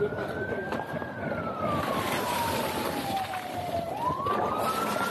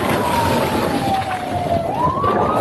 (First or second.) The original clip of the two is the second